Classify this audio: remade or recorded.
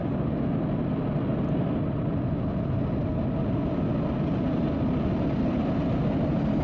recorded